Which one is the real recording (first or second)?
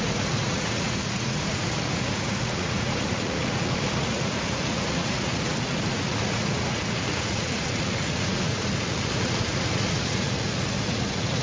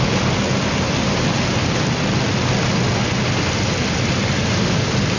second